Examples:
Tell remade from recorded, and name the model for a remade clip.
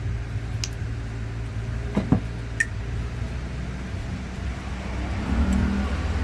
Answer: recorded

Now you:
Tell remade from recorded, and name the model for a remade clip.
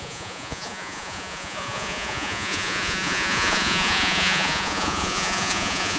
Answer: remade, vocoder, Vocos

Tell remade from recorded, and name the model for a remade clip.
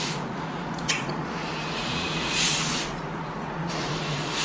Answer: remade, vocoder, Vocos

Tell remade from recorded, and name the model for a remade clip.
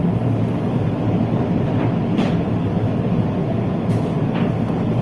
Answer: recorded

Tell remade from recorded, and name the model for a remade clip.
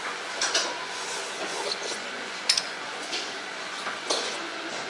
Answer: remade, vocoder, Vocos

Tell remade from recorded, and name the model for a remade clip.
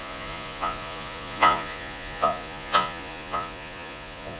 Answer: remade, vocoder, Vocos